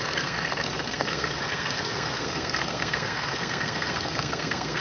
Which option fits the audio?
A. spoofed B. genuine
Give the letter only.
A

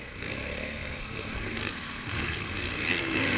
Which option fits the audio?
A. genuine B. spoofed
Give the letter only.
B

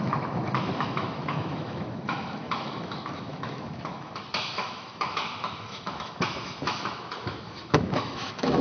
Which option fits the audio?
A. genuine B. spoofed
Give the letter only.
B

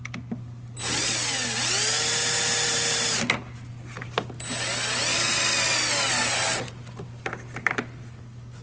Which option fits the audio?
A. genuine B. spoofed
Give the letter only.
A